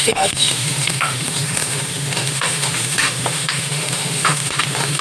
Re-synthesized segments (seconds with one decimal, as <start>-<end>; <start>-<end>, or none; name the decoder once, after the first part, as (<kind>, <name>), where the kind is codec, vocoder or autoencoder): 0.0-5.0 (autoencoder, DAC-VAE)